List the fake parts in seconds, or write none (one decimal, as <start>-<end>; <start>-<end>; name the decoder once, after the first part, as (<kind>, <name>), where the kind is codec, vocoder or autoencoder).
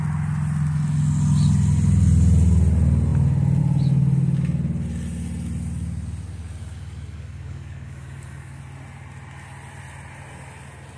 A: 6.6-8.6 (codec, DAC)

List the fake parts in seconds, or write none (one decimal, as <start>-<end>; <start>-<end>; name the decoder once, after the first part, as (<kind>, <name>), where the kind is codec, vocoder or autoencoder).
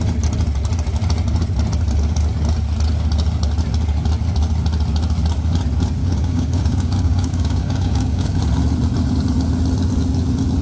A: 6.0-8.4 (codec, DAC)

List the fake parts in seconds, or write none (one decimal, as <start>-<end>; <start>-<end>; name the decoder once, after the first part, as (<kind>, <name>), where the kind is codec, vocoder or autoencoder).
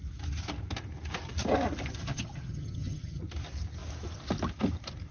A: 2.0-3.2 (vocoder, HiFi-GAN)